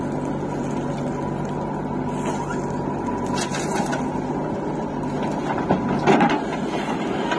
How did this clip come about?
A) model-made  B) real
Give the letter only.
B